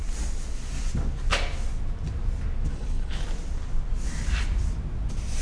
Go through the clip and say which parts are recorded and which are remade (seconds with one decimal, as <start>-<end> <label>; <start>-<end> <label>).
0.0-2.7 recorded; 2.7-3.2 remade; 3.2-5.4 recorded